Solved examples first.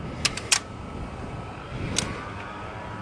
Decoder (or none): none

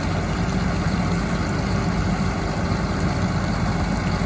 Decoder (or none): none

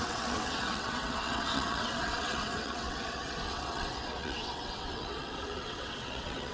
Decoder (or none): vocoder, WaveNeXt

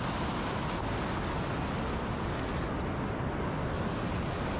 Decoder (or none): none